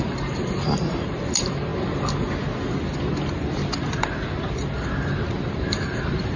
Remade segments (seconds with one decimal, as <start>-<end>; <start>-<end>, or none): 0.0-1.7; 5.5-6.4